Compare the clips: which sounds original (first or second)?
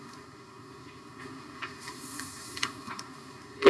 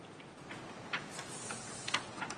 second